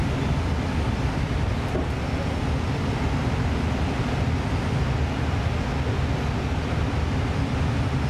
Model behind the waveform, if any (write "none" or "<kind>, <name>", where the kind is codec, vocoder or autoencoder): none